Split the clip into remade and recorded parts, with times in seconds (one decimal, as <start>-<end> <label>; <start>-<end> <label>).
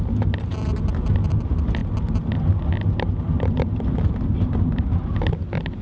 0.0-5.8 recorded